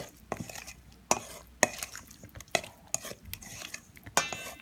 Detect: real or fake real